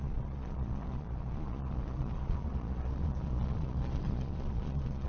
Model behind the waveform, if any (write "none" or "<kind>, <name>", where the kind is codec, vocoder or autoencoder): vocoder, Vocos